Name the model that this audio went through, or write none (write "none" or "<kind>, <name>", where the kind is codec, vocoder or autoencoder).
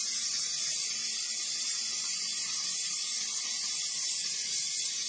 none